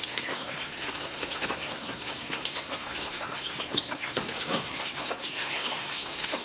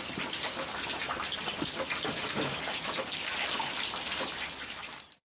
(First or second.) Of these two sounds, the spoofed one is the first